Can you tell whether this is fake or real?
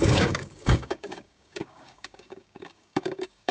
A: fake